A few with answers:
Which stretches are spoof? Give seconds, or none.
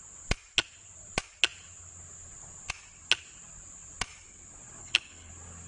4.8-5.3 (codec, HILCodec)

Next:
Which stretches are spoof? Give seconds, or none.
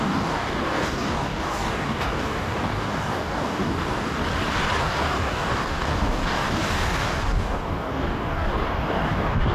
0.0-4.2 (codec, DAC); 4.8-9.5